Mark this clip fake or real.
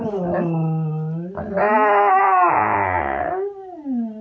real